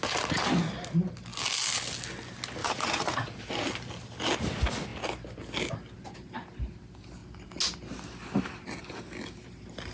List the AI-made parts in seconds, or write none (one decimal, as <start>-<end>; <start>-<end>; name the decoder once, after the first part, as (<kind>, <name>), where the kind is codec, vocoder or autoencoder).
2.6-3.4 (vocoder, Vocos)